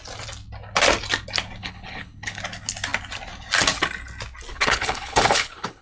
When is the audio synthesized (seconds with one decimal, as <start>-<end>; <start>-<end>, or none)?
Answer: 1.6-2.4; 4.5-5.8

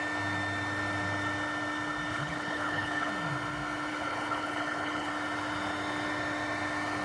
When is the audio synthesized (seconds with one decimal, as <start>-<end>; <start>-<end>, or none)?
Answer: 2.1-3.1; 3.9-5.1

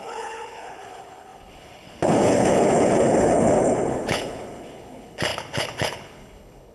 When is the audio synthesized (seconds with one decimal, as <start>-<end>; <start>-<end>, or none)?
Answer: 0.0-6.7

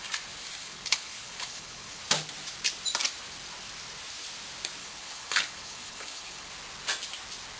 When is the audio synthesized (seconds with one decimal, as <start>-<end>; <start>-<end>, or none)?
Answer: 0.6-2.0; 4.8-6.5

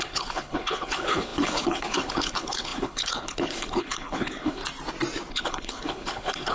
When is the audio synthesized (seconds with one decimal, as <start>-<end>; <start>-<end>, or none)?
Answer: 0.0-4.6; 5.3-6.5

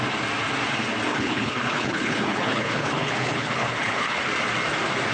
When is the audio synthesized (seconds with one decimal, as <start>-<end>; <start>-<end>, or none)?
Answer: 1.1-4.2